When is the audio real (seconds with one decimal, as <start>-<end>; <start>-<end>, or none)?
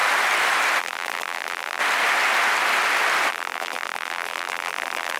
0.0-0.8; 1.8-3.3